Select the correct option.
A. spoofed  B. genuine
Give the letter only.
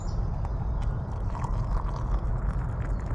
B